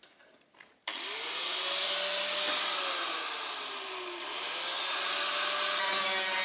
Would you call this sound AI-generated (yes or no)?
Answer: no